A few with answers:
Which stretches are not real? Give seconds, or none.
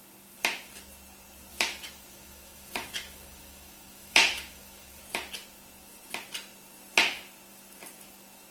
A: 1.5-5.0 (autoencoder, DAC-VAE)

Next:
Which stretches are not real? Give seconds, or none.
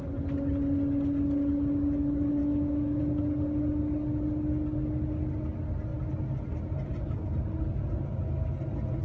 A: 2.4-3.0 (autoencoder, DAC-VAE)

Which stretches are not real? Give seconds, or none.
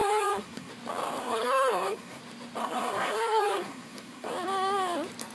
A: 0.0-0.7 (codec, SNAC); 1.2-2.2; 2.6-4.3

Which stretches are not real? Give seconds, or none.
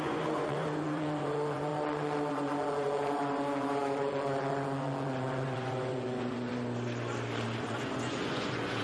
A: 0.0-1.7 (vocoder, Vocos); 2.3-6.5; 7.6-8.8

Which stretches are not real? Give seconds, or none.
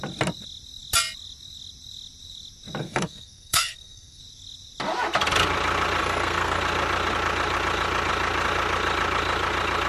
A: 2.8-4.2 (codec, SNAC); 6.0-6.6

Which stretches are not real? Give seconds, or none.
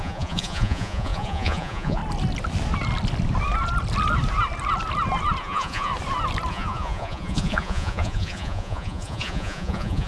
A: 0.0-2.0 (vocoder, Vocos); 5.4-5.9; 6.5-10.1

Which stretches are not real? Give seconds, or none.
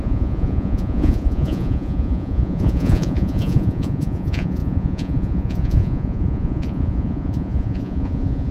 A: 0.0-8.5 (vocoder, Vocos)